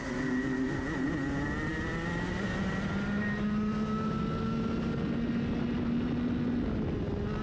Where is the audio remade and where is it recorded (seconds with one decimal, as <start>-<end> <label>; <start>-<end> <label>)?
0.0-7.4 recorded